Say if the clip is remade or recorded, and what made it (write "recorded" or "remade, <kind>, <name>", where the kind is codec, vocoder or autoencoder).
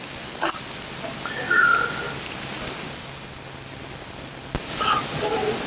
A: recorded